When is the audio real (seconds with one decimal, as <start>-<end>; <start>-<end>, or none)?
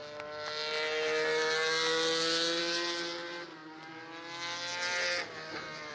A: 0.0-5.9